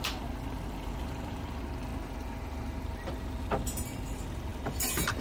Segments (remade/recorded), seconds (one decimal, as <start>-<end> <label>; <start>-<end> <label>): 0.0-4.5 recorded; 4.5-5.2 remade